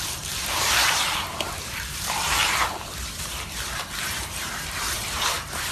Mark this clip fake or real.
fake